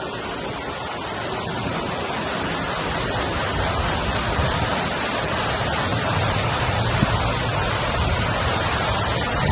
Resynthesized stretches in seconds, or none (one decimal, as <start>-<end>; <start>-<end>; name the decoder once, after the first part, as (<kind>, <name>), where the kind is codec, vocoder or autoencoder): 5.9-6.7 (vocoder, BigVGAN v2); 7.5-9.0